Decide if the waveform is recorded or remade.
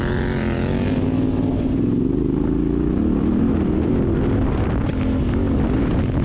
recorded